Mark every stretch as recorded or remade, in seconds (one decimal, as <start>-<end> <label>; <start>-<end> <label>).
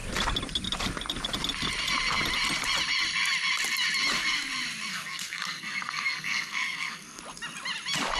0.0-4.9 recorded; 4.9-7.2 remade; 7.2-8.2 recorded